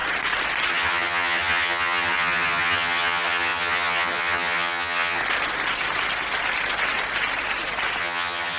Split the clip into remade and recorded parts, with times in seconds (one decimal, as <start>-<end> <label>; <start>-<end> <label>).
0.0-0.7 recorded; 0.7-5.2 remade; 5.2-8.0 recorded; 8.0-8.6 remade